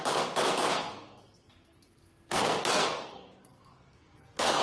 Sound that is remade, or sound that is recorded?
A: remade